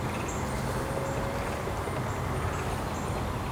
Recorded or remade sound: recorded